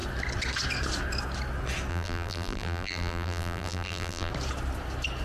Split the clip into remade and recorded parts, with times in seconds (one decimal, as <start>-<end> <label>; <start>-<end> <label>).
0.0-1.9 recorded; 1.9-4.3 remade; 4.3-5.2 recorded